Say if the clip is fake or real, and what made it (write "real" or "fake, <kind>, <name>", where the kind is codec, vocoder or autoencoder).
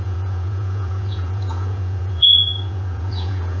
fake, vocoder, Vocos